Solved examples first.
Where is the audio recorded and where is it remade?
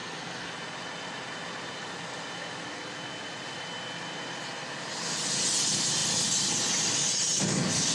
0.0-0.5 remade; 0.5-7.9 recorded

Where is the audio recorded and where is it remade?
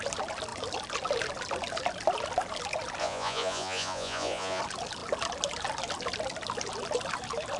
0.0-3.0 recorded; 3.0-4.6 remade; 4.6-7.6 recorded